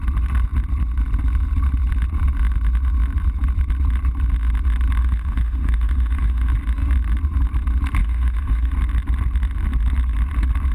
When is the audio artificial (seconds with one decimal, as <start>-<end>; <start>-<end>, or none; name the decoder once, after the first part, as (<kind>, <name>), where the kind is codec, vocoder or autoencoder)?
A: 5.0-6.5 (autoencoder, DAC-VAE); 8.0-8.7